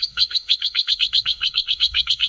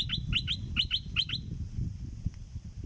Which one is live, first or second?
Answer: second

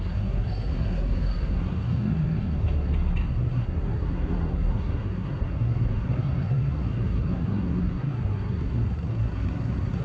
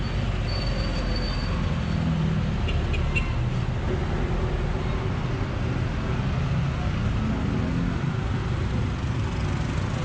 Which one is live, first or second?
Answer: second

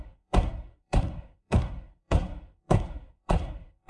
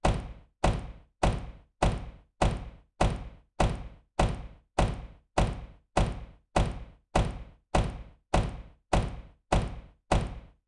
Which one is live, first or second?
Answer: second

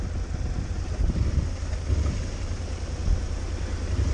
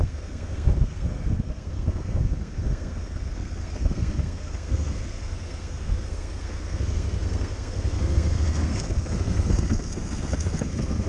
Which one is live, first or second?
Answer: first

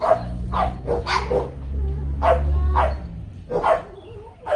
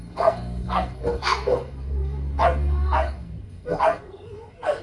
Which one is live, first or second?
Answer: first